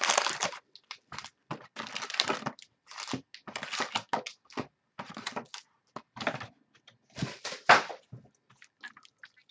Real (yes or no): yes